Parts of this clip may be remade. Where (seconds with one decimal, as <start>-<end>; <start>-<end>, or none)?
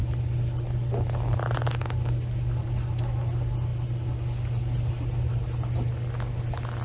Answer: none